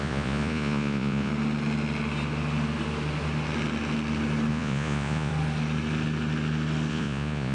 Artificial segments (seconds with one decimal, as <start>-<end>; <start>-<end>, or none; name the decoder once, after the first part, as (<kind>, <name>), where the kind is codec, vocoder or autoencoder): 0.0-1.3 (vocoder, Vocos); 4.5-5.3; 6.9-7.5

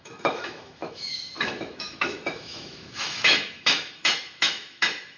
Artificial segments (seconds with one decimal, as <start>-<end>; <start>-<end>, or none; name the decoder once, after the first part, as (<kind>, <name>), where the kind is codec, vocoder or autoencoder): 0.0-5.2 (autoencoder, DAC-VAE)

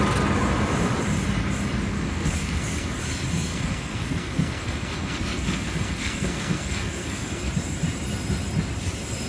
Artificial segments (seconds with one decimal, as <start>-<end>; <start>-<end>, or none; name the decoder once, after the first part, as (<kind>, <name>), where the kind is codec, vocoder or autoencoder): 1.9-3.0 (codec, SNAC); 3.5-7.5

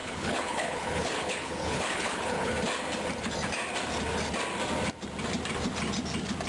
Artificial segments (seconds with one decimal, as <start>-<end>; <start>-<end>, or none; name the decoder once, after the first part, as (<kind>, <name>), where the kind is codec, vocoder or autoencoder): 0.0-2.5 (codec, HILCodec)

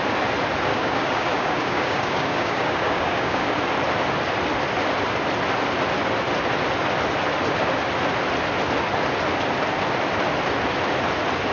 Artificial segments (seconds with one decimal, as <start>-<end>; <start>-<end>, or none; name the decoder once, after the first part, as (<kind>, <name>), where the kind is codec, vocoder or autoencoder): 0.7-3.6 (codec, DAC)

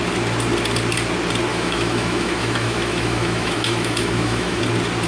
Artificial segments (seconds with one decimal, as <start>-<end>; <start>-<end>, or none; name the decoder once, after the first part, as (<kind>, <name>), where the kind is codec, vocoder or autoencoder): 1.5-4.6 (autoencoder, DAC-VAE)

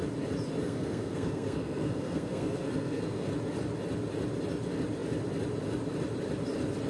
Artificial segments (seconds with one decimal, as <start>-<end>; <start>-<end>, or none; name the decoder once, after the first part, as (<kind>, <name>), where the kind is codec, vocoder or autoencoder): 0.6-3.3 (codec, SNAC)

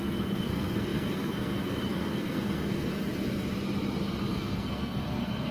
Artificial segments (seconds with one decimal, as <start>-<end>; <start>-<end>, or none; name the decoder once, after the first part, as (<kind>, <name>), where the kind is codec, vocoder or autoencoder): 0.0-2.9 (codec, SNAC); 4.3-5.5